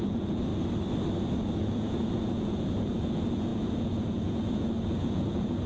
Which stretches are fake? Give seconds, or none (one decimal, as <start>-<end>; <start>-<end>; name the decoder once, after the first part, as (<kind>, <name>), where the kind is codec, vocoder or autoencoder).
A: 0.0-0.5 (vocoder, Vocos); 1.6-5.7